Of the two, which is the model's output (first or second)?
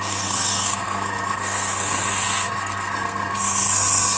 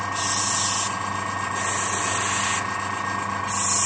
first